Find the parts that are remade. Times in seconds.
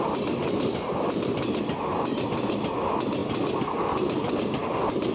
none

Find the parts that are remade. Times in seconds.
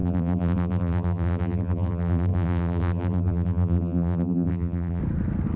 0.0-5.0 (vocoder, BigVGAN v2)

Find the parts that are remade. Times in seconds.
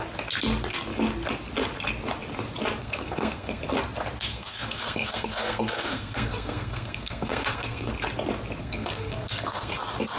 2.8-3.6 (codec, SNAC); 4.3-7.9; 8.6-9.7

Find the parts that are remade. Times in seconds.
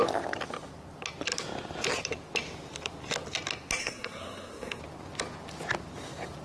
3.8-4.8 (codec, SNAC)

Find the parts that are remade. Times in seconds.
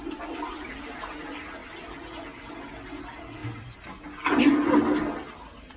none